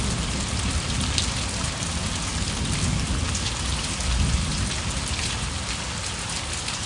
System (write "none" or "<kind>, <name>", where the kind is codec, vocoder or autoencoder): none